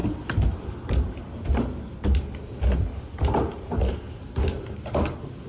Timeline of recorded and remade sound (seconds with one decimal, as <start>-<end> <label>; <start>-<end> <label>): 0.0-5.5 recorded